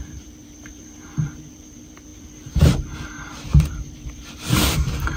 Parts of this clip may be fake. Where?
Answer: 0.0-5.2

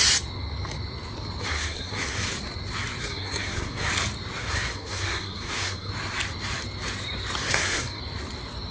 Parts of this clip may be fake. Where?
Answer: 1.4-2.3; 3.0-3.9; 4.4-5.9; 7.4-8.0

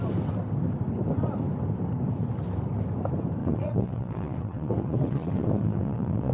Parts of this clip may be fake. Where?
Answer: 3.4-6.3

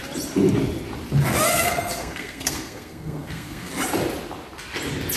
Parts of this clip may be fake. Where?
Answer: 1.5-3.7

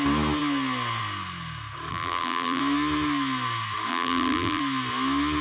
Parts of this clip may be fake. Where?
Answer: 1.9-2.6; 3.9-4.6

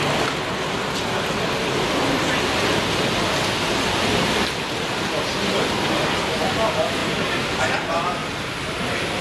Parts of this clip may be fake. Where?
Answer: 7.0-7.6

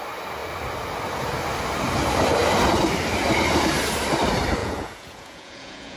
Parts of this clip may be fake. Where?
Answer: 4.6-6.0

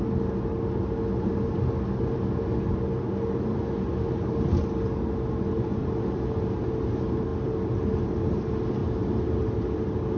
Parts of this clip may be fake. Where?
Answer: 5.8-6.6; 8.8-9.5